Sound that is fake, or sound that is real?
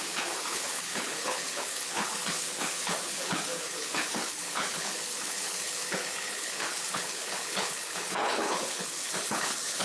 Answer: fake